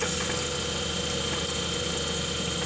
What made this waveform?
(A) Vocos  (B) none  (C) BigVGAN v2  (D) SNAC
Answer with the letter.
B